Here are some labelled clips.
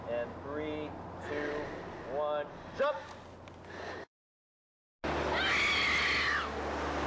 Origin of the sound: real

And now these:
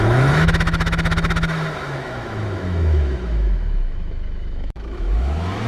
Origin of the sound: fake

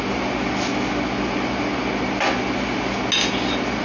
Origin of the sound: real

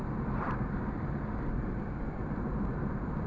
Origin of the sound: real